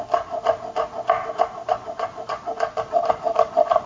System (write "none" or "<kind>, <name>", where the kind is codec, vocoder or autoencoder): none